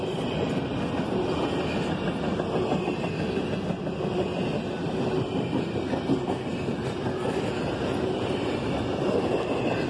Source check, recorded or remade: recorded